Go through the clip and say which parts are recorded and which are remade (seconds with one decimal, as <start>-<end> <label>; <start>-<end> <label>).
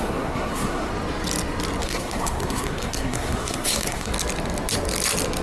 0.0-0.9 remade; 0.9-1.8 recorded; 1.8-4.1 remade; 4.1-5.4 recorded